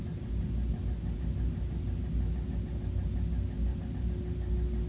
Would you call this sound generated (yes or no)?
no